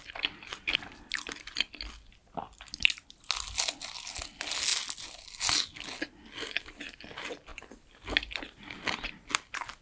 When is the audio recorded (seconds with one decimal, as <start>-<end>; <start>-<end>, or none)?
0.0-0.5; 1.7-9.8